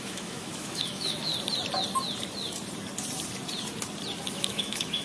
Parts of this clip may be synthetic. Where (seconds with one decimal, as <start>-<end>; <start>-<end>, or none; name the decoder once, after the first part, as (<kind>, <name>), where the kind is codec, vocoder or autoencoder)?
0.0-1.3 (autoencoder, DAC-VAE); 4.3-5.0